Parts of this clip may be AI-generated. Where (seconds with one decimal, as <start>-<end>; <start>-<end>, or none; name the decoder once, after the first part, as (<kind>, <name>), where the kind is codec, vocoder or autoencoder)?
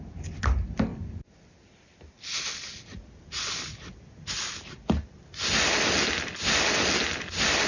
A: none